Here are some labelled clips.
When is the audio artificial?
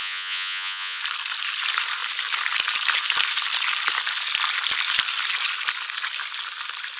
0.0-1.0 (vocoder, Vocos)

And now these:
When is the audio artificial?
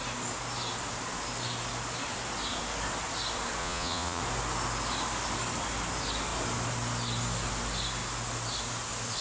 3.6-4.2 (vocoder, Vocos)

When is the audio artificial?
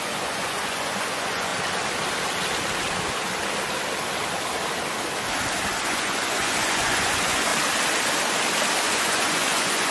0.0-1.5 (vocoder, Vocos); 5.8-7.5; 8.8-9.9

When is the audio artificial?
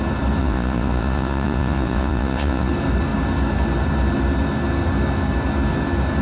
0.4-2.7 (vocoder, Vocos)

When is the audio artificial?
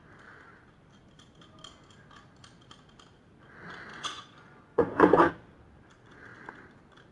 3.9-5.3 (vocoder, Vocos)